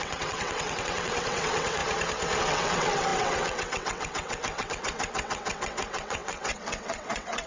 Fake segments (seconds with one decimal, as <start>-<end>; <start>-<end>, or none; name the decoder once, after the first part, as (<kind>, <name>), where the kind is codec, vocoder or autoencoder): 0.0-1.8 (vocoder, WaveNeXt); 2.4-7.5